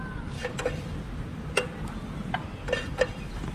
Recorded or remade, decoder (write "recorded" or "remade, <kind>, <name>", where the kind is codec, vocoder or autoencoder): recorded